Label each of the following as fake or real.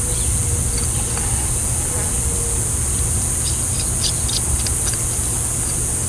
real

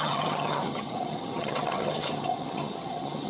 fake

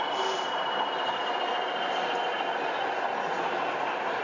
real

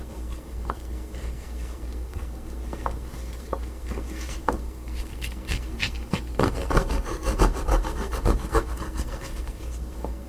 fake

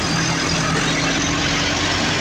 real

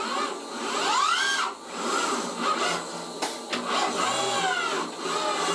real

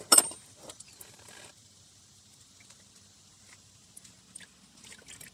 real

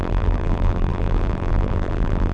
fake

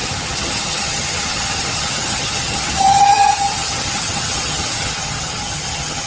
fake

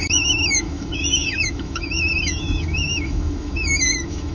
fake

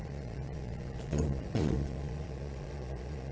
fake